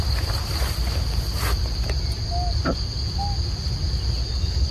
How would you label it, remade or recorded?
recorded